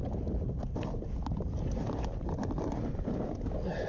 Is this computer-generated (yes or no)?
no